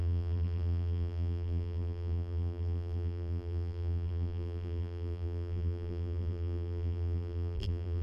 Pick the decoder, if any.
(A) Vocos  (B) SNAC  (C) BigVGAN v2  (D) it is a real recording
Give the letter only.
C